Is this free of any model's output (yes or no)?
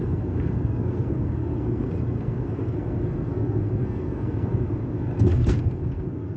no